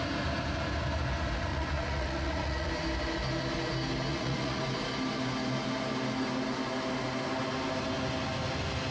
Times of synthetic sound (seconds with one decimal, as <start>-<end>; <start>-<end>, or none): 1.5-2.7; 4.1-4.6